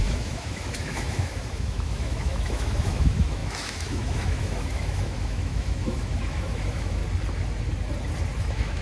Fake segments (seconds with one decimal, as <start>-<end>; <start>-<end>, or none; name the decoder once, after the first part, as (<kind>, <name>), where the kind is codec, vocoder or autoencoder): 0.0-7.0 (autoencoder, DAC-VAE); 8.4-8.8